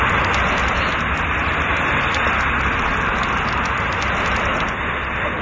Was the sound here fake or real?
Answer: real